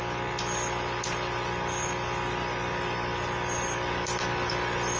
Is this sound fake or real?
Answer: real